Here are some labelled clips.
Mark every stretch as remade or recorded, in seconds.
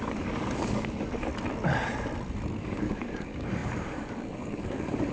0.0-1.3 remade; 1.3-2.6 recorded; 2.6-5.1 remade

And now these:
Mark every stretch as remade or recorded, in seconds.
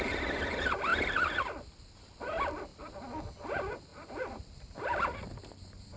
0.0-6.0 recorded